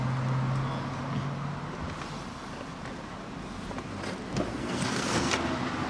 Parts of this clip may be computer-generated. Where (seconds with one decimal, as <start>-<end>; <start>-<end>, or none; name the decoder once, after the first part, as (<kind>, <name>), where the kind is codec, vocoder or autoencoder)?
4.5-5.3 (codec, SNAC)